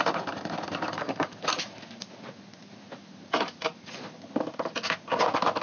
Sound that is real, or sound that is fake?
real